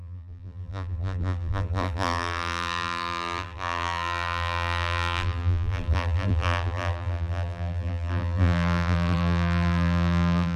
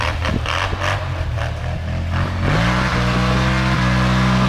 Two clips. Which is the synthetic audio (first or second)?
first